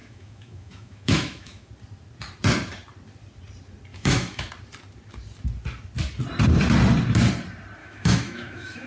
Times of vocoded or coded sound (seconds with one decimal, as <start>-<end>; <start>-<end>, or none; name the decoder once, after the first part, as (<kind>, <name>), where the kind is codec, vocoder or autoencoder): 0.0-1.7 (autoencoder, DAC-VAE); 3.9-4.5; 7.8-8.9